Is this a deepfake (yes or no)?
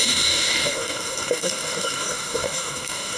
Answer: yes